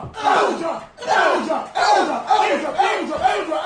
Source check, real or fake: real